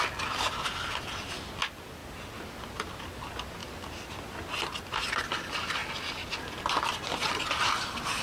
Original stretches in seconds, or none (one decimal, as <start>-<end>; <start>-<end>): 0.0-8.2